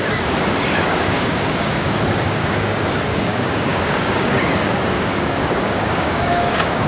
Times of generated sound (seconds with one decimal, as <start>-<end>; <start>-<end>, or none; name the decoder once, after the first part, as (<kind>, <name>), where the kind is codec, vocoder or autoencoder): 0.0-6.9 (codec, DAC)